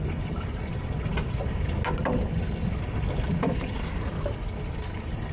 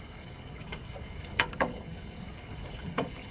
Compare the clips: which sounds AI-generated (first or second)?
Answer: second